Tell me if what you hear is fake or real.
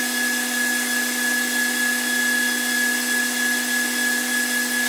real